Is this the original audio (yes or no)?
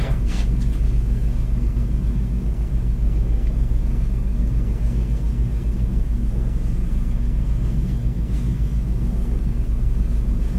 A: no